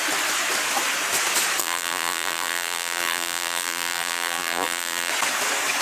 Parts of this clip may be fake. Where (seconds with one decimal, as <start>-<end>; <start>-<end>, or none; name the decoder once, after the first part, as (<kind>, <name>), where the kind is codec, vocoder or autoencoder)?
1.6-5.1 (vocoder, BigVGAN v2)